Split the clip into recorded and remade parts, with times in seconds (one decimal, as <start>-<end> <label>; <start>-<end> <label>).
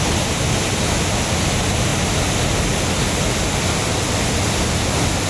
0.0-5.3 recorded